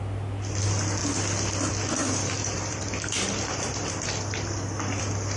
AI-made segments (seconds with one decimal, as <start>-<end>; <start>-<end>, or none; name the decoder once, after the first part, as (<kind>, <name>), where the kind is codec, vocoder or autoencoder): 2.4-5.0 (vocoder, BigVGAN v2)